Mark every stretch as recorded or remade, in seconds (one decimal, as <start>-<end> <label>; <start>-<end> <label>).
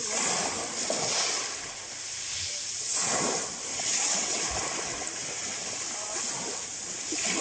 0.0-3.7 recorded; 3.7-4.4 remade; 4.4-7.4 recorded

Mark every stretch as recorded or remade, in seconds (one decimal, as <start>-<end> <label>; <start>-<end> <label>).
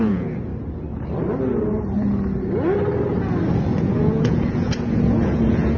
0.0-0.5 remade; 0.5-3.8 recorded; 3.8-5.8 remade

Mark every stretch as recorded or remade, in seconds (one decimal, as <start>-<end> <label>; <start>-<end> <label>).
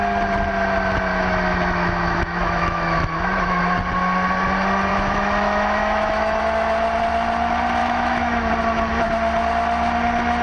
0.0-1.1 recorded; 1.1-3.6 remade; 3.6-4.9 recorded; 4.9-6.4 remade; 6.4-7.8 recorded; 7.8-8.5 remade; 8.5-10.4 recorded